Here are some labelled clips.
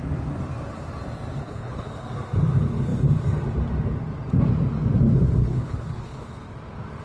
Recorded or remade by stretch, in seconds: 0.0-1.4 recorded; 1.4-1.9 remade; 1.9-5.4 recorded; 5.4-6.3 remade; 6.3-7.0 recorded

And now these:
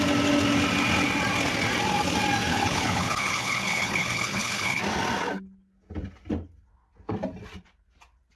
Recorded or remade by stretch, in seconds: 0.0-2.5 recorded; 2.5-4.8 remade; 4.8-8.4 recorded

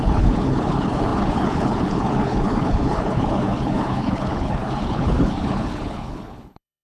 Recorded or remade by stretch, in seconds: 0.0-6.8 remade